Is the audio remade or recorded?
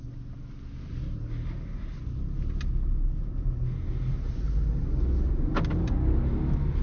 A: recorded